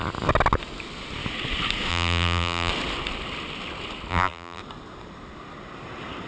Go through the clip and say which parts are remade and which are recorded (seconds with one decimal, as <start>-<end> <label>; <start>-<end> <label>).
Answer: 0.0-1.9 recorded; 1.9-2.7 remade; 2.7-4.1 recorded; 4.1-4.6 remade; 4.6-6.3 recorded